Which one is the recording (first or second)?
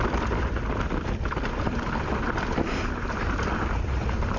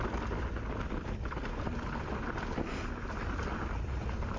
second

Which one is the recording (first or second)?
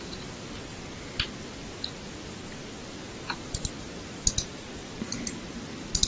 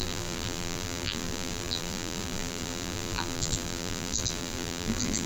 first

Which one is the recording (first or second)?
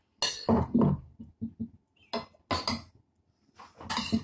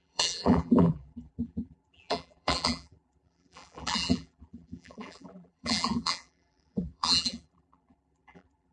first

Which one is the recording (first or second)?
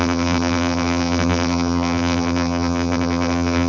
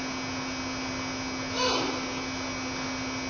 second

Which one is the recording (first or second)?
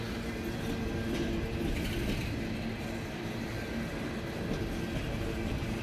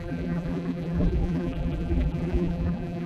first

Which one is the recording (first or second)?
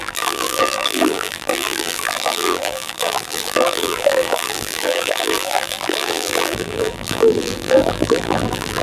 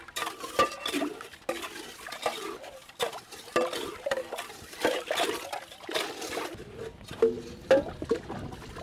second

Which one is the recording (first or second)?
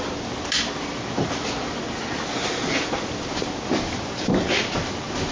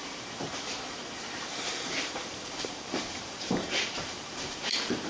first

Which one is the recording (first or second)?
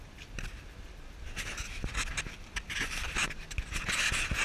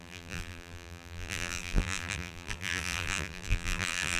first